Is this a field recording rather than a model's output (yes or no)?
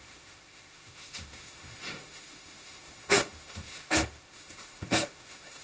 no